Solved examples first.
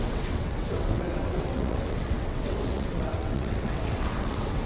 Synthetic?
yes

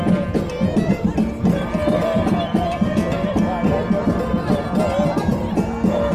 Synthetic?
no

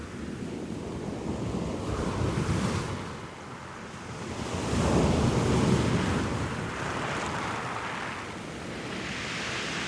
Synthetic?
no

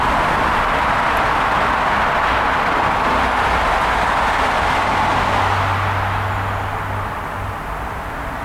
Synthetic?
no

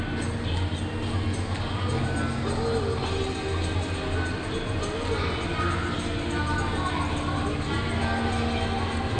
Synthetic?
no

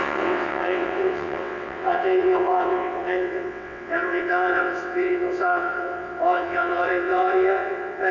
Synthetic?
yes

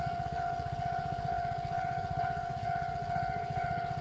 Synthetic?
yes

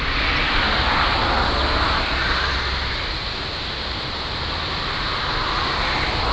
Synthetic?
no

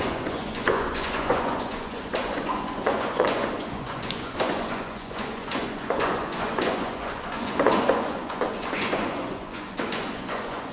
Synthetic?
yes